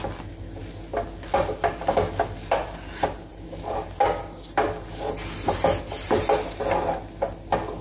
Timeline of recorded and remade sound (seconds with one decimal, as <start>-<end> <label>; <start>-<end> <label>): 0.0-7.8 recorded